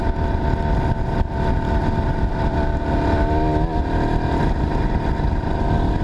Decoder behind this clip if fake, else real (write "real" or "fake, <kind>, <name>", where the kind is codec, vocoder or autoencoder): real